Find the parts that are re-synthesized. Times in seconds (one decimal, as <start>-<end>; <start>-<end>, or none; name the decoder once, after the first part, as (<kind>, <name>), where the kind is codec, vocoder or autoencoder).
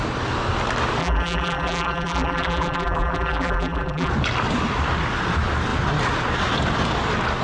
1.0-4.1 (vocoder, BigVGAN v2)